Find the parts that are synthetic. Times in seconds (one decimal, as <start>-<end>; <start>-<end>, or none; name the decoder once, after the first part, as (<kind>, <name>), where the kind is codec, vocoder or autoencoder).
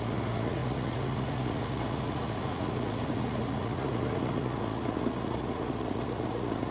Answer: 0.0-6.7 (vocoder, Vocos)